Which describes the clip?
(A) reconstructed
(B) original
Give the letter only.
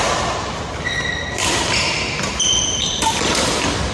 B